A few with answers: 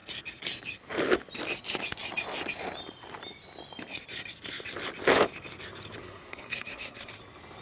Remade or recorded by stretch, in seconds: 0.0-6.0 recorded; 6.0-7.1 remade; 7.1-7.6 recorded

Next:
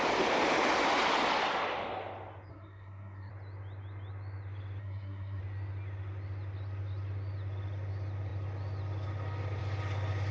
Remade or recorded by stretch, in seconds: 0.0-2.5 recorded; 2.5-3.3 remade; 3.3-4.8 recorded; 4.8-5.4 remade; 5.4-10.3 recorded

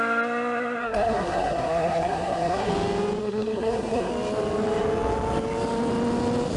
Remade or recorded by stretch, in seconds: 0.0-0.8 recorded; 0.8-2.7 remade; 2.7-3.2 recorded; 3.2-4.1 remade; 4.1-6.6 recorded

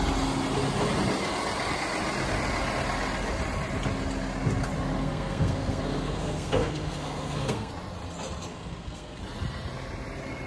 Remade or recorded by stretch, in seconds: 0.0-5.0 recorded; 5.0-7.7 remade; 7.7-8.5 recorded; 8.5-9.2 remade; 9.2-10.5 recorded

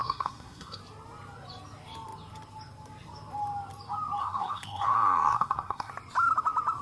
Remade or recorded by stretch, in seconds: 0.0-0.8 remade; 0.8-4.2 recorded; 4.2-5.9 remade; 5.9-6.8 recorded

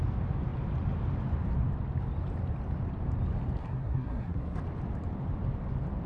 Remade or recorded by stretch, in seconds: 0.0-3.6 recorded; 3.6-4.6 remade; 4.6-6.1 recorded

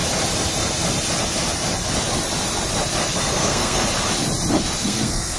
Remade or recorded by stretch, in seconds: 0.0-3.2 recorded; 3.2-3.8 remade; 3.8-4.8 recorded; 4.8-5.4 remade